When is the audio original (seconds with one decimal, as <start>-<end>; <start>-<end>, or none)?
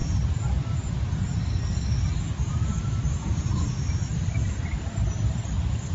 0.0-5.9